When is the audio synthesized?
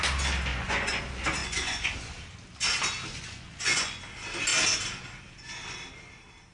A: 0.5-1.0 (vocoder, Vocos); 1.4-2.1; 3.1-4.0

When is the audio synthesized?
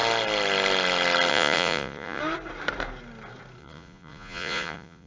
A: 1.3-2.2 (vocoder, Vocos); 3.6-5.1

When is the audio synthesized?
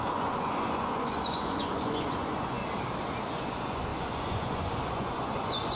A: 0.0-2.6 (vocoder, Vocos); 3.3-5.8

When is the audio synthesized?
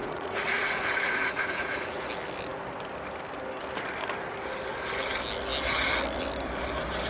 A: 0.0-2.1 (vocoder, Vocos)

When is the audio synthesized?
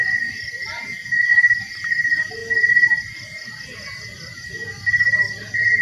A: none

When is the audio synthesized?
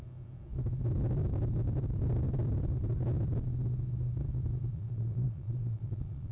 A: 4.7-6.3 (vocoder, Vocos)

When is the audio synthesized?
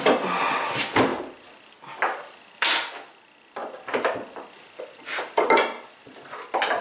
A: none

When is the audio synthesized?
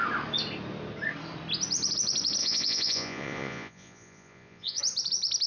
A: 2.4-4.8 (vocoder, Vocos)